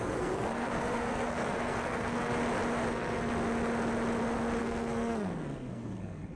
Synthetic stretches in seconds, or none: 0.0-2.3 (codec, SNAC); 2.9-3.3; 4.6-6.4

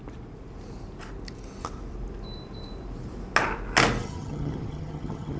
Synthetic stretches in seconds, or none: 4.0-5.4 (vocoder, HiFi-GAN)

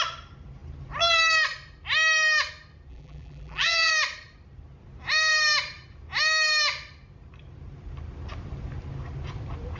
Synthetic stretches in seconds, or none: 2.9-3.9 (vocoder, BigVGAN v2)